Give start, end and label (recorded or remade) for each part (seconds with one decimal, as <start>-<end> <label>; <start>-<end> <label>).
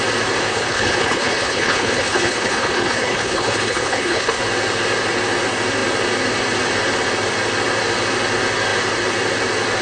0.0-0.5 recorded; 0.5-4.4 remade; 4.4-9.8 recorded